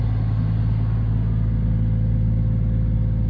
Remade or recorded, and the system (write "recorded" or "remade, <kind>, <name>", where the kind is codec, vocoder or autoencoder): recorded